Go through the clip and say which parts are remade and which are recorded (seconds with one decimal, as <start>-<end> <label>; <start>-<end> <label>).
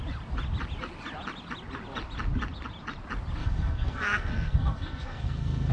0.0-3.4 recorded; 3.4-5.7 remade